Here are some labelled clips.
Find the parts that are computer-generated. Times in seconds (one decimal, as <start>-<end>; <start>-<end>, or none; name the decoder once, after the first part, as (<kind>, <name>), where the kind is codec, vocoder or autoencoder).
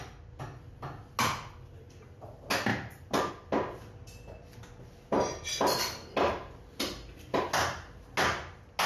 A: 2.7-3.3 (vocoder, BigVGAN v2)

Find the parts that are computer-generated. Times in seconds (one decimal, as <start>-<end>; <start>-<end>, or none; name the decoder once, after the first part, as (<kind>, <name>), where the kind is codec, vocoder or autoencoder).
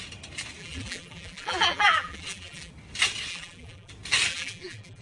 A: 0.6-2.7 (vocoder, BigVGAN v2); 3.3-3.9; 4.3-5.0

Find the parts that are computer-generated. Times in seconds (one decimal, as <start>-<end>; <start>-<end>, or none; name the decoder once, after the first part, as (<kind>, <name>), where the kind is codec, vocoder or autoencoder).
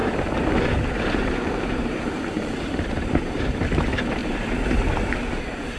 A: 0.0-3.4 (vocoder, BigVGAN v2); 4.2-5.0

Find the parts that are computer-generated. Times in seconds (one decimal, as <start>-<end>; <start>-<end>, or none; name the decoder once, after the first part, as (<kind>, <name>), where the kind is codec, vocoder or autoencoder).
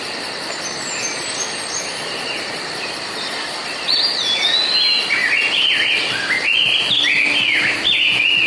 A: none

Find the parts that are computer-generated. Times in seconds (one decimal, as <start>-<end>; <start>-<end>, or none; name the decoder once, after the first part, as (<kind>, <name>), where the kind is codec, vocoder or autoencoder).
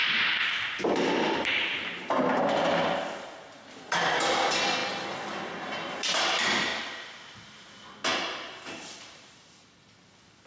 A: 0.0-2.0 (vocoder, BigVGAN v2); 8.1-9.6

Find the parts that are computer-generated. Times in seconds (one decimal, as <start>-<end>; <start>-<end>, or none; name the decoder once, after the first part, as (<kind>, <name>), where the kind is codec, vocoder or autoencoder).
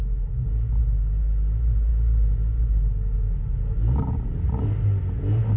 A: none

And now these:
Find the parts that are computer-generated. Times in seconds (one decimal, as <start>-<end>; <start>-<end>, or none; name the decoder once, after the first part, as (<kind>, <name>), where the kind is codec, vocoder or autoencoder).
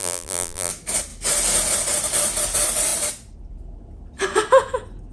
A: 0.0-0.7 (vocoder, BigVGAN v2)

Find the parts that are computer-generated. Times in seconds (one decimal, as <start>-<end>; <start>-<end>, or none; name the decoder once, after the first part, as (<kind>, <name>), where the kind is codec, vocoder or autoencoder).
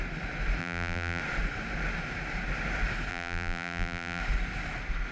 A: 0.6-1.2 (vocoder, BigVGAN v2); 3.1-4.2